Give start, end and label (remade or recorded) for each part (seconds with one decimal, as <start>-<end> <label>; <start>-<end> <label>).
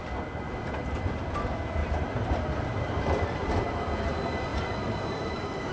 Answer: 0.0-1.8 recorded; 1.8-3.0 remade; 3.0-4.5 recorded; 4.5-5.2 remade; 5.2-5.7 recorded